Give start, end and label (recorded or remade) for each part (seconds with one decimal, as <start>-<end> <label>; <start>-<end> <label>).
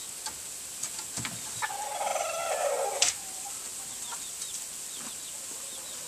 0.0-6.1 recorded